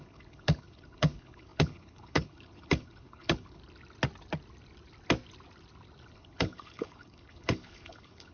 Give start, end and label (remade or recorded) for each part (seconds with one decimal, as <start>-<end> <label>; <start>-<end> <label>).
0.0-3.6 remade; 3.6-6.1 recorded; 6.1-8.3 remade